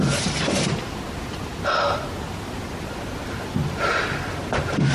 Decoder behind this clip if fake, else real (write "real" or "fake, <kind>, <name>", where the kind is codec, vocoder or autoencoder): real